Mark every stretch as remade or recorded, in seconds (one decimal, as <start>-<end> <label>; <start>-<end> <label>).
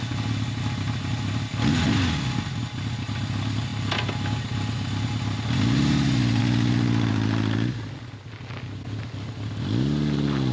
0.0-10.5 recorded